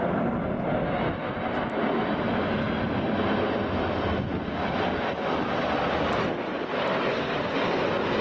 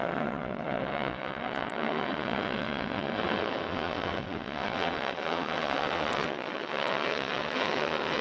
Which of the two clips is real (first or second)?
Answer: first